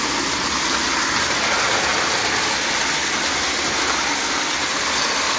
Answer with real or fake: real